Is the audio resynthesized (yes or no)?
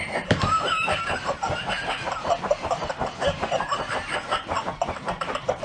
yes